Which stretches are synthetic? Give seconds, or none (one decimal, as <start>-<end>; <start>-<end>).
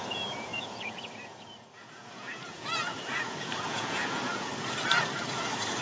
0.0-4.5; 5.2-5.8